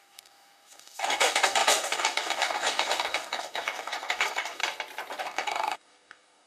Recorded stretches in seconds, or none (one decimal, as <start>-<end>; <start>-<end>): 4.6-5.2